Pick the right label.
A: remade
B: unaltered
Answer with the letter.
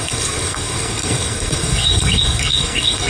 A